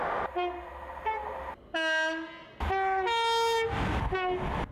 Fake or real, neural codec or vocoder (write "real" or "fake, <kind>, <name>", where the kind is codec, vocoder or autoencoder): real